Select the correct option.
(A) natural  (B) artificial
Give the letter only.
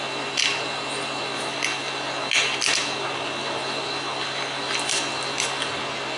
A